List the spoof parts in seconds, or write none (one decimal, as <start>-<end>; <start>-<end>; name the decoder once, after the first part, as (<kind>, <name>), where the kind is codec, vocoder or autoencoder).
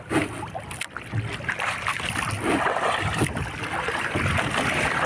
none